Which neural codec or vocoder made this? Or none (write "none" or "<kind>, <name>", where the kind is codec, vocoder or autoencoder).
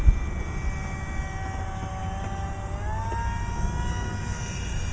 none